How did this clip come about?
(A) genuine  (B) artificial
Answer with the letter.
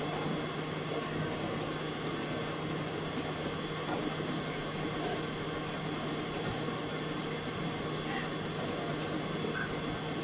A